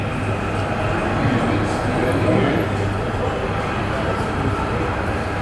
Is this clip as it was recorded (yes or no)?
yes